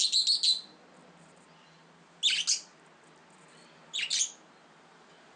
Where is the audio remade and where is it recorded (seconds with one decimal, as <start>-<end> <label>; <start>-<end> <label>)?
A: 0.0-5.4 recorded